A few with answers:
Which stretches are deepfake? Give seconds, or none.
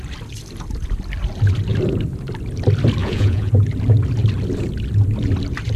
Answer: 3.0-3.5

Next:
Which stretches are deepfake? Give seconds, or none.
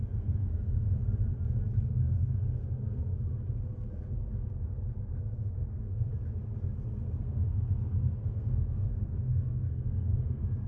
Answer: 0.0-0.9; 1.9-3.3; 5.2-6.1; 7.0-10.7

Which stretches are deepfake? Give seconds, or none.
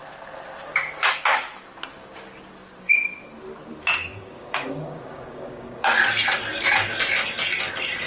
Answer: 4.1-5.9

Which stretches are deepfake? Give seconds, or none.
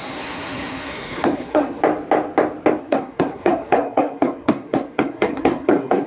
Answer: 0.0-1.8; 2.8-6.1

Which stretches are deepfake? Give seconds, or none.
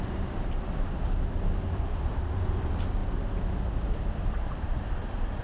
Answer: 0.0-3.0; 4.9-5.4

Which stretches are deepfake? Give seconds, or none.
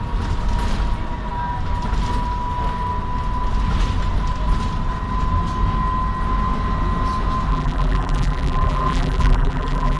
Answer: 7.5-10.0